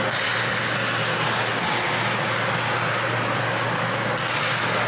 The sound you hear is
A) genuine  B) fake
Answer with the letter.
A